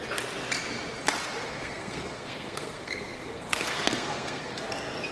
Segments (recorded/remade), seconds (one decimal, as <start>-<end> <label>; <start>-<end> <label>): 0.0-1.5 recorded; 1.5-4.6 remade; 4.6-5.1 recorded